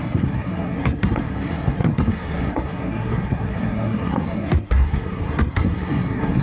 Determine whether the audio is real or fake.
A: fake